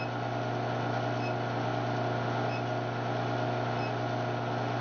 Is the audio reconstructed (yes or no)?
no